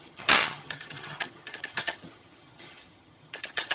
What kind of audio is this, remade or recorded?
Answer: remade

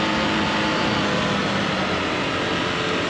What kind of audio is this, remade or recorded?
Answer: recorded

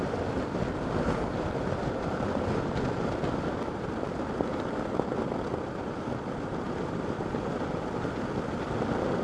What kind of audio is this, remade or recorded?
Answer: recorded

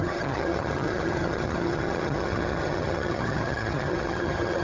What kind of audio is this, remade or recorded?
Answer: remade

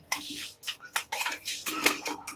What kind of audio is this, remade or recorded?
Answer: remade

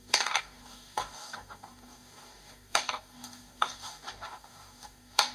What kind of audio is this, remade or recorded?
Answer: remade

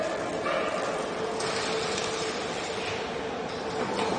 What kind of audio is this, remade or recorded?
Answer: recorded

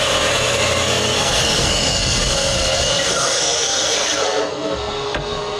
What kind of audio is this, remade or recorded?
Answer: remade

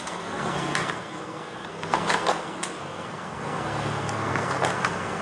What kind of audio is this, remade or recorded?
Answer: remade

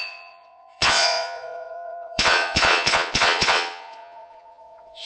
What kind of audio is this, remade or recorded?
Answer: remade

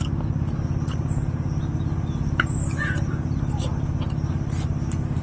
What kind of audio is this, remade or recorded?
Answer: recorded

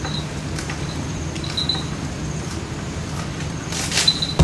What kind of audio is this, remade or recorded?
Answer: recorded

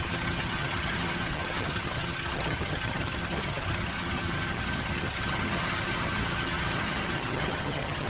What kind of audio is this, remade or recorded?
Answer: remade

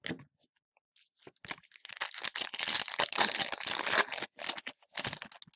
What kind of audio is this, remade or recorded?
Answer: recorded